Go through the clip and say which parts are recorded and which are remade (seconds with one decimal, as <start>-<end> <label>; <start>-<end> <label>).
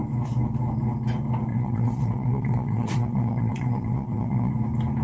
0.0-1.5 recorded; 1.5-4.5 remade; 4.5-5.0 recorded